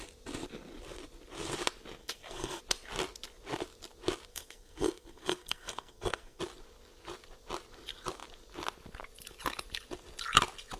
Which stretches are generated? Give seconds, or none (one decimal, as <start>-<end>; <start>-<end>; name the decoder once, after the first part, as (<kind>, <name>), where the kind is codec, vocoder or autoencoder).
2.0-2.6 (codec, SNAC); 4.3-6.4